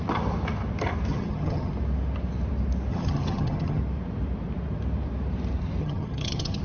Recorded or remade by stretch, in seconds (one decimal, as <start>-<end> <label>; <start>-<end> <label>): 0.0-1.1 recorded; 1.1-1.7 remade; 1.7-2.9 recorded; 2.9-3.8 remade; 3.8-5.8 recorded; 5.8-6.6 remade